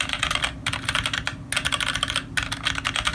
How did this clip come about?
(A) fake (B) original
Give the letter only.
B